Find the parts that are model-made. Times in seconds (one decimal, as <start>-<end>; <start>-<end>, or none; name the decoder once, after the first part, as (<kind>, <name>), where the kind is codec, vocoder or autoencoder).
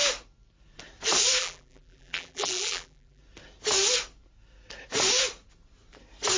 1.4-3.2 (vocoder, BigVGAN v2)